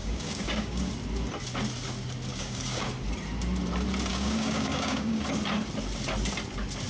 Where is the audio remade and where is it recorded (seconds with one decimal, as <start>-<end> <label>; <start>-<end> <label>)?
0.0-0.9 remade; 0.9-2.3 recorded; 2.3-2.9 remade; 2.9-4.1 recorded; 4.1-5.2 remade; 5.2-6.9 recorded